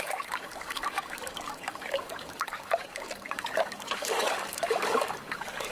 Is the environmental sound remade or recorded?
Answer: remade